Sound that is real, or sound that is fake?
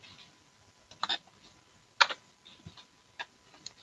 real